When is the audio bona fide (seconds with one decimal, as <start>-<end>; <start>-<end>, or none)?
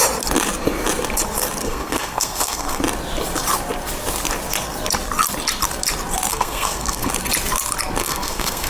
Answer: 0.0-1.6; 2.8-6.3; 7.1-8.0